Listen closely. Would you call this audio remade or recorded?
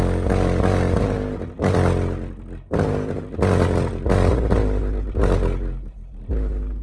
recorded